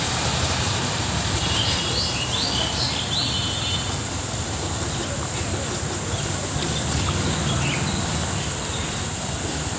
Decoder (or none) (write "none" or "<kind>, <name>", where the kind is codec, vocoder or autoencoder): none